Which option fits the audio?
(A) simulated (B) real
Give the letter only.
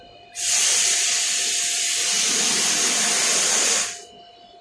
B